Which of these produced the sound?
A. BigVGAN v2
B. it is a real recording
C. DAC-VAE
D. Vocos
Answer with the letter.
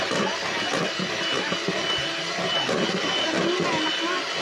B